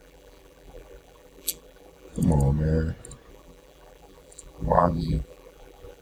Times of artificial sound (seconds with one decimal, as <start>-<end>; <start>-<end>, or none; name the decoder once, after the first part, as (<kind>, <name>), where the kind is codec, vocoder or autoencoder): 0.0-2.1 (vocoder, BigVGAN v2); 3.3-6.0